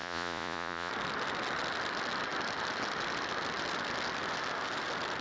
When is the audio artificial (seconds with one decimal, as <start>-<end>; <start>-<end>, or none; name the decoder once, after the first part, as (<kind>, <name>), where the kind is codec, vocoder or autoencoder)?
0.0-0.9 (vocoder, Vocos)